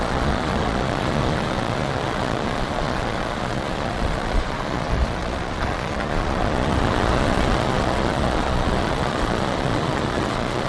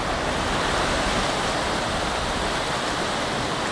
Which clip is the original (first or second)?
second